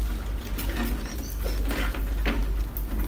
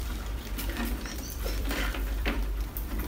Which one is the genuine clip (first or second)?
first